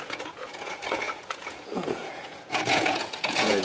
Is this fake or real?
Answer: fake